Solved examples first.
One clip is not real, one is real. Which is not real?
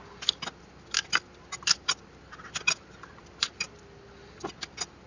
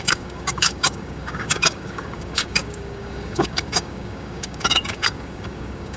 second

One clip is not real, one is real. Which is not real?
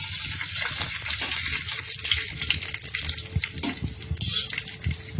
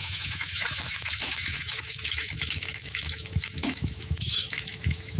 second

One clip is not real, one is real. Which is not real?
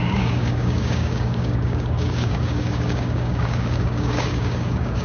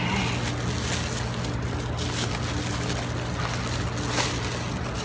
first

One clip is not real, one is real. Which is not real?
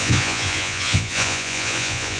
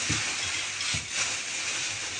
first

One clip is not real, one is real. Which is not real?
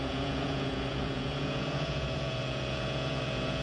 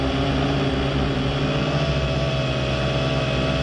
first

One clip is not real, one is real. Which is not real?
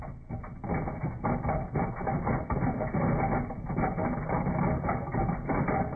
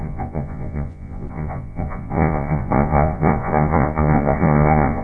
second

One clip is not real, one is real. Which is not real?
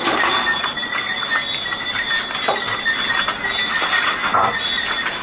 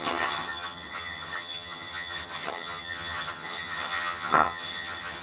second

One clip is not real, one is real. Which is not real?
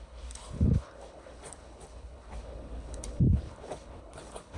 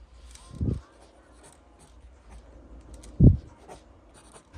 first